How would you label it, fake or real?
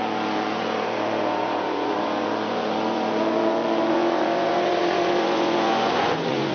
fake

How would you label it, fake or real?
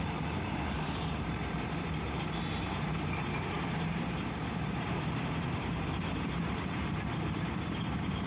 fake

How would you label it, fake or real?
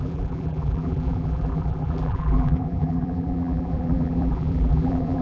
fake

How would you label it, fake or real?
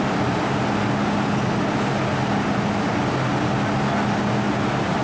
real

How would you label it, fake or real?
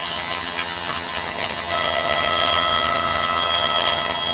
fake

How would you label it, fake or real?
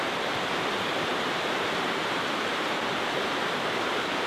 fake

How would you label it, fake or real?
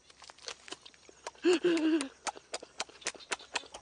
real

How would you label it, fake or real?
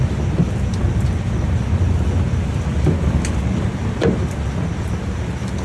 real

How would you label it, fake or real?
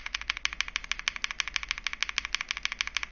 real